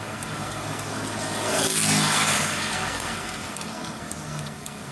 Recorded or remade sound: remade